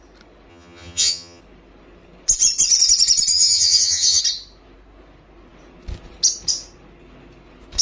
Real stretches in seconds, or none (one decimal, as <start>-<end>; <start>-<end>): 0.0-0.5; 1.4-3.3; 4.2-7.8